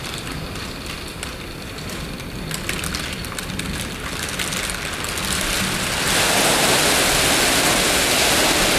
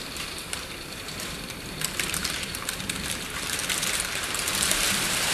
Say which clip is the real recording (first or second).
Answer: first